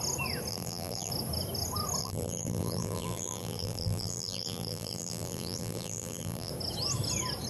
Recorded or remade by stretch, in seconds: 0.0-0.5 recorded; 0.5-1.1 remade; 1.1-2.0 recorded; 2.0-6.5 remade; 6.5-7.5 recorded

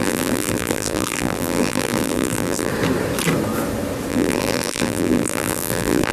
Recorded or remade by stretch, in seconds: 0.0-2.7 remade; 2.7-4.1 recorded; 4.1-6.1 remade

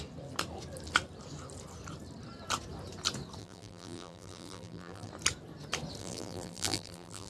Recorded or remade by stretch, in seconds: 0.0-3.4 recorded; 3.4-5.1 remade; 5.1-6.0 recorded; 6.0-7.3 remade

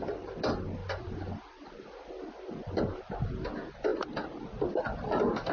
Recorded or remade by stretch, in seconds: 0.0-0.8 recorded; 0.8-1.7 remade; 1.7-3.9 recorded; 3.9-4.4 remade; 4.4-5.5 recorded